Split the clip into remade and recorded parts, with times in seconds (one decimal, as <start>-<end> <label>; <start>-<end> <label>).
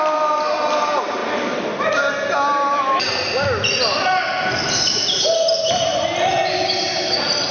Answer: 0.0-7.5 recorded